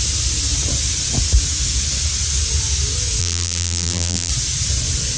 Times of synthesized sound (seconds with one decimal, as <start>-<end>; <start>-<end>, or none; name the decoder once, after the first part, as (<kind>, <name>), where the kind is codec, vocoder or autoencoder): 3.2-4.3 (vocoder, BigVGAN v2)